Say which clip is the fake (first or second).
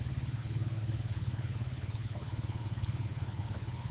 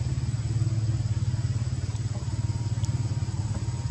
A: first